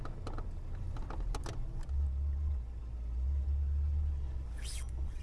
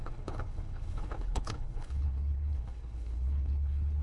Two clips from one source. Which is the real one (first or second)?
first